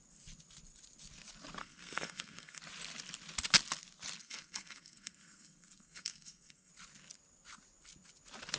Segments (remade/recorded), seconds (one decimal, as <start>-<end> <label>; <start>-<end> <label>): 0.0-1.6 recorded; 1.6-2.6 remade; 2.6-4.2 recorded; 4.2-6.7 remade; 6.7-8.6 recorded